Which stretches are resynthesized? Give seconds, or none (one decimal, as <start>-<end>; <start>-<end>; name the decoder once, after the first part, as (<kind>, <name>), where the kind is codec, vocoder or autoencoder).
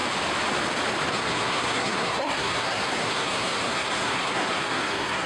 1.1-5.3 (codec, SNAC)